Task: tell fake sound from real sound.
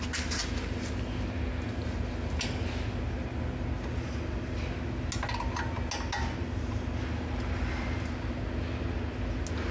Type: real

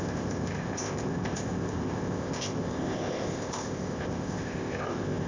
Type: fake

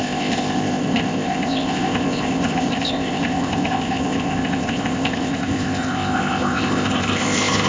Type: fake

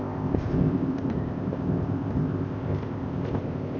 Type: fake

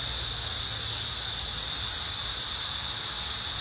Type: real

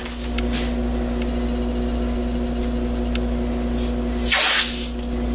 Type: real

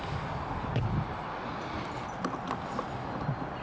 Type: real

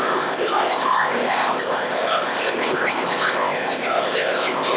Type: fake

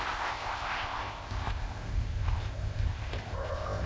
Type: fake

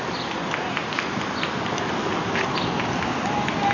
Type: real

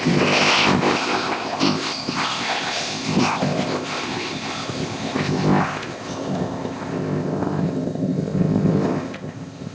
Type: fake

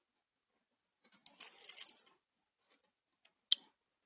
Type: real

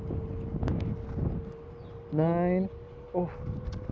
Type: real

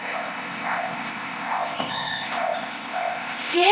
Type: fake